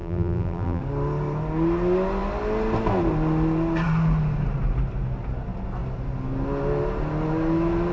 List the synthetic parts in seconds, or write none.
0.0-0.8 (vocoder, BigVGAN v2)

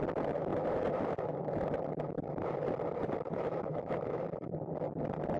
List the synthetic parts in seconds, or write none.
3.0-3.8 (vocoder, BigVGAN v2)

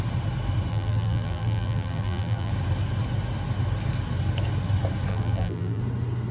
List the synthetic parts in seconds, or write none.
0.7-2.5 (vocoder, BigVGAN v2); 5.1-5.8

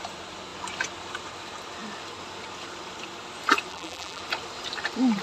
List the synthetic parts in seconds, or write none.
3.7-4.2 (vocoder, BigVGAN v2)

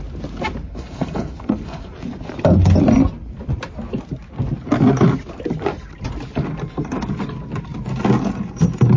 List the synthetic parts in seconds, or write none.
0.7-1.9 (codec, SNAC)

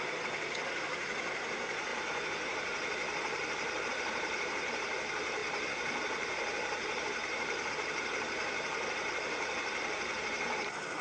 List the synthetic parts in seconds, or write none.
0.0-11.0 (vocoder, BigVGAN v2)

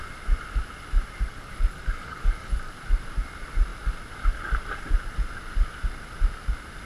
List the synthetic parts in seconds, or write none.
1.3-2.7 (codec, DAC)

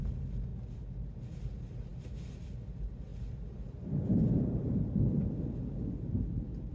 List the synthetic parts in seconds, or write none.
0.5-1.2 (vocoder, BigVGAN v2)